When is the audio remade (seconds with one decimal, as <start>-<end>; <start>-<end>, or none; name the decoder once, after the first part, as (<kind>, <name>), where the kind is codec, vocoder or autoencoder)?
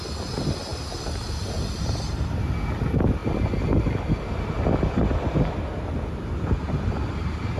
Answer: 0.7-1.5 (vocoder, BigVGAN v2)